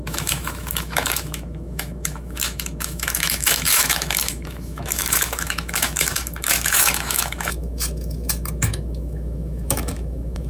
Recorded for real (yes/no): no